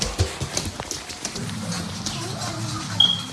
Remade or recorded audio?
recorded